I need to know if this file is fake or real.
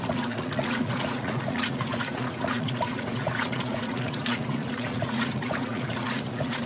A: fake